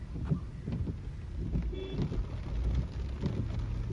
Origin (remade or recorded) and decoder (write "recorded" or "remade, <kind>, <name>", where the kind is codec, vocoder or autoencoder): recorded